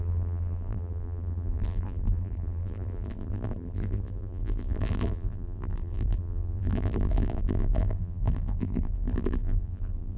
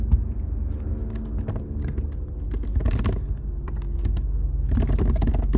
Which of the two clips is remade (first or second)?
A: first